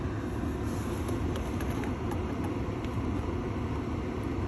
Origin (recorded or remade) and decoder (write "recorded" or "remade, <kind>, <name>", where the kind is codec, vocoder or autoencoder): recorded